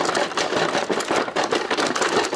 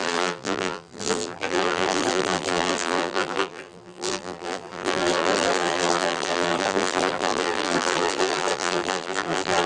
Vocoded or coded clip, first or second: second